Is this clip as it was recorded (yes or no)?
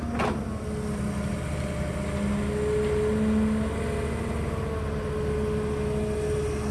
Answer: yes